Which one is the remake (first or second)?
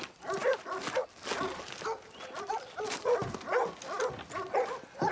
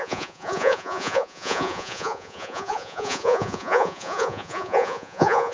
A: second